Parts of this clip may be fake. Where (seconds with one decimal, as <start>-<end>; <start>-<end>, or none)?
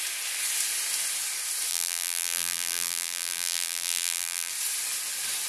1.7-4.5